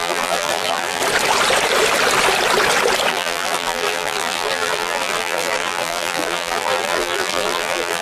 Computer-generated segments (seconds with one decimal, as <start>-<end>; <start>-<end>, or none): 0.0-1.0; 3.1-8.0